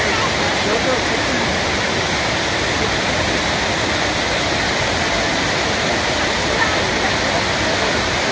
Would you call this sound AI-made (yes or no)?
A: no